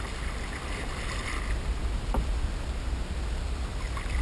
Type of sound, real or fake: real